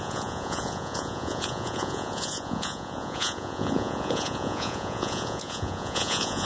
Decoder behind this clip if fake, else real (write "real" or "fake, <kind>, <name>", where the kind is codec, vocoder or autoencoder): fake, vocoder, Vocos